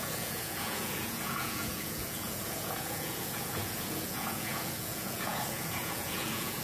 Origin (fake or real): fake